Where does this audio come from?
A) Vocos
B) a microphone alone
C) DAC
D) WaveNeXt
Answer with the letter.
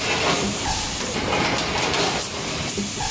B